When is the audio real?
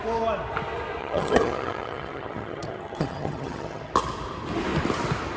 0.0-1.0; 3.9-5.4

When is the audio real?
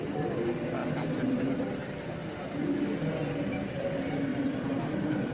0.0-5.3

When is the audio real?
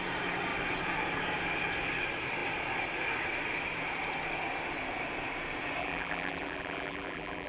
0.0-5.8